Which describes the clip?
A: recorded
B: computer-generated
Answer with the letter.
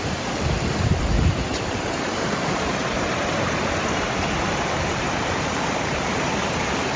B